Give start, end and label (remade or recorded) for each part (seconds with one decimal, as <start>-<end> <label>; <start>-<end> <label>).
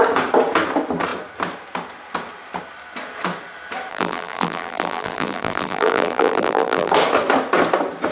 0.0-3.9 recorded; 3.9-6.9 remade; 6.9-8.1 recorded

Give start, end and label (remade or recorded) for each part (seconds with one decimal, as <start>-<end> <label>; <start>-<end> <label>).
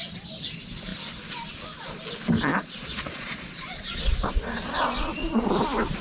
0.0-2.5 recorded; 2.5-5.5 remade; 5.5-6.0 recorded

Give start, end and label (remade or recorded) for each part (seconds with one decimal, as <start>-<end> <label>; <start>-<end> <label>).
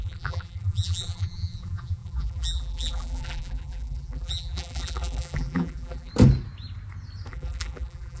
0.0-6.1 remade; 6.1-7.3 recorded; 7.3-8.2 remade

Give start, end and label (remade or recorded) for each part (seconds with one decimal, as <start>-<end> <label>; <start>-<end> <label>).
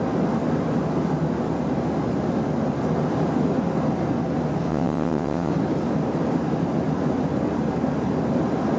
0.0-4.7 recorded; 4.7-5.5 remade; 5.5-8.8 recorded